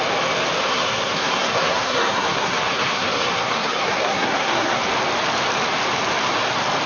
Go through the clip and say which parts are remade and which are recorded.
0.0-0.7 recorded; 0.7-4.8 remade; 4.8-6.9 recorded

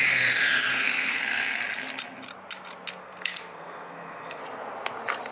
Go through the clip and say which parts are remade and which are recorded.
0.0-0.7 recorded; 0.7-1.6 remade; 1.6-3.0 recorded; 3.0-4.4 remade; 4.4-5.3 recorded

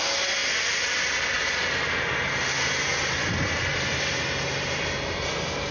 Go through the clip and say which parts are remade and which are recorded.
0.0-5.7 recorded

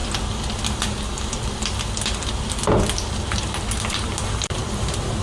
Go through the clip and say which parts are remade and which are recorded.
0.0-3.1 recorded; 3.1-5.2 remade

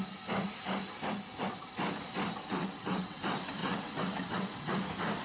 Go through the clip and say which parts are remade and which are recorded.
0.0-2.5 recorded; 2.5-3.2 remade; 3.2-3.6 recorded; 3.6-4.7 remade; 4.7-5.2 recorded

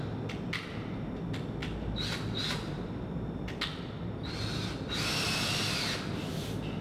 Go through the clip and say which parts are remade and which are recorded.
0.0-6.8 recorded

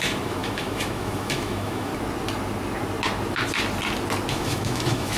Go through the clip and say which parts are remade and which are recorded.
0.0-1.9 remade; 1.9-4.3 recorded; 4.3-5.2 remade

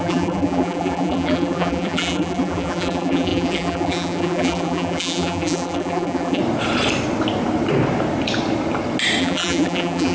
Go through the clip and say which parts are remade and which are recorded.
0.0-6.4 remade; 6.4-9.2 recorded; 9.2-10.1 remade